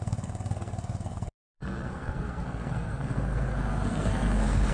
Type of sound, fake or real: fake